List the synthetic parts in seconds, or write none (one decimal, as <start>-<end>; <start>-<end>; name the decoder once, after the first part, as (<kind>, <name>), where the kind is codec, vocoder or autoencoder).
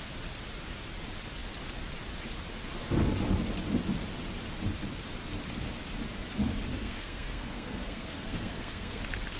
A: 6.7-9.0 (codec, SNAC)